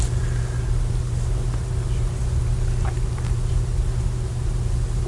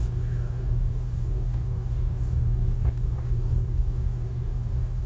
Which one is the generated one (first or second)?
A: second